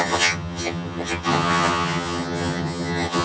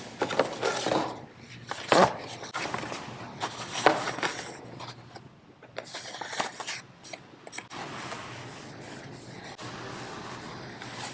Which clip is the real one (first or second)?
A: second